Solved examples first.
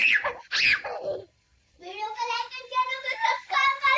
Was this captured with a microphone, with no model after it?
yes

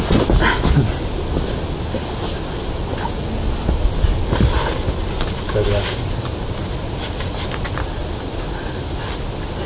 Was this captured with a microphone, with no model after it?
yes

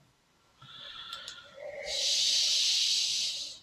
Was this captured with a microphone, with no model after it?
no